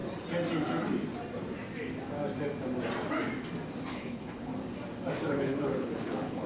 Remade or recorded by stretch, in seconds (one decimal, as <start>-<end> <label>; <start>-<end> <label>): 0.0-3.9 recorded; 3.9-4.5 remade; 4.5-5.3 recorded; 5.3-6.5 remade